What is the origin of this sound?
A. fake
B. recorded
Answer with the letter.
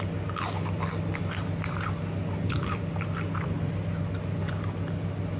B